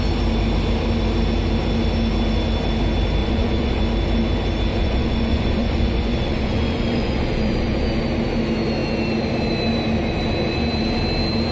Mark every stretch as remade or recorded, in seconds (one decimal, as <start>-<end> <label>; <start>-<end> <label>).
0.0-3.2 recorded; 3.2-3.8 remade; 3.8-4.7 recorded; 4.7-8.0 remade; 8.0-11.5 recorded